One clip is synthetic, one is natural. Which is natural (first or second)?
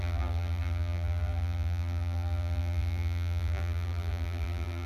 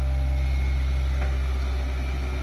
second